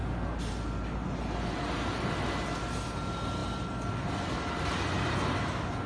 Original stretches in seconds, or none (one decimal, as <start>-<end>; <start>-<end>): 0.0-5.9